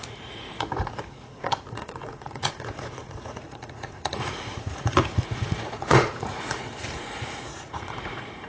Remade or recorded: remade